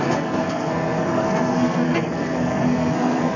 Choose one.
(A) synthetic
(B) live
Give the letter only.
A